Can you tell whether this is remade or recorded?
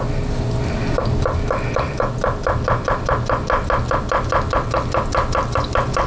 recorded